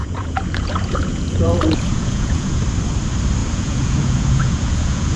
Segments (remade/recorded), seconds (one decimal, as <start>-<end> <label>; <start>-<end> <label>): 0.0-2.6 remade; 2.6-3.4 recorded; 3.4-5.2 remade